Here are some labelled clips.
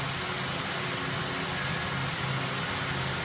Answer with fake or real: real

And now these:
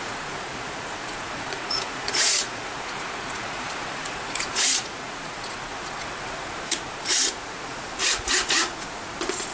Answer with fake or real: fake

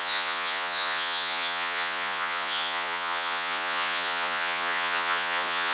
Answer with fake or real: fake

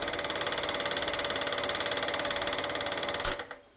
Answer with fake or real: real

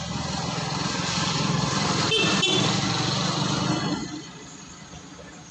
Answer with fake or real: real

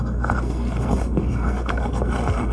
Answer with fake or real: fake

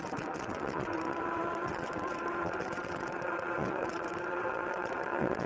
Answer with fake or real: fake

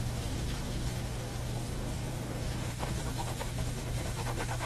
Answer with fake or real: fake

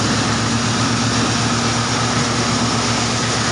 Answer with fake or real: real